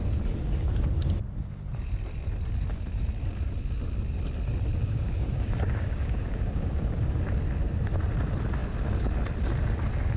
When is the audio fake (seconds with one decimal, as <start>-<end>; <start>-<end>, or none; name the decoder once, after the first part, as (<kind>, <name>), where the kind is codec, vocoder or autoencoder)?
4.8-7.2 (codec, DAC)